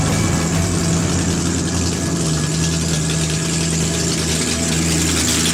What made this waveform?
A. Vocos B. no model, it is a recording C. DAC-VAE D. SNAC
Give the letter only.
B